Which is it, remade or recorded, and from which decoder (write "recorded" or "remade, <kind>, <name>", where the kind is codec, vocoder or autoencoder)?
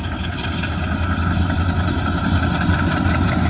recorded